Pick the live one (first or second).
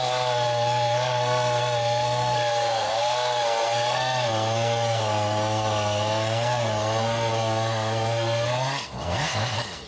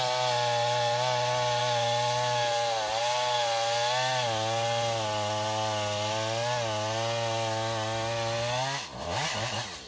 second